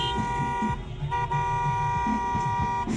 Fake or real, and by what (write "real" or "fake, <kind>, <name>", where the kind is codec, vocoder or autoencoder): real